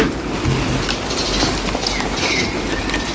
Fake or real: real